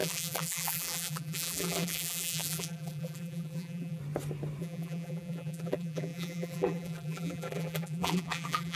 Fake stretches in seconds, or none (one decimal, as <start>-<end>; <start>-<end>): 0.0-4.0; 4.6-8.8